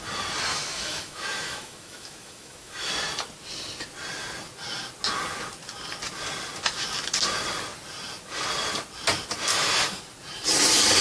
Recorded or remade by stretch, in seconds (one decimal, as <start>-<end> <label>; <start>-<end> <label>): 0.0-0.5 recorded; 0.5-2.9 remade; 2.9-9.5 recorded; 9.5-10.0 remade; 10.0-11.0 recorded

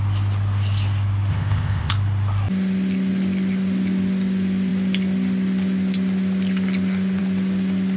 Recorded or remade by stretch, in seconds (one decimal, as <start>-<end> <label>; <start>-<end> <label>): 0.0-1.3 recorded; 1.3-1.9 remade; 1.9-8.0 recorded

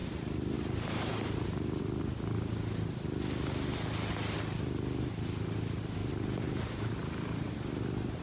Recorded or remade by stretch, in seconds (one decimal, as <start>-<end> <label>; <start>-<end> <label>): 0.0-1.8 remade; 1.8-8.2 recorded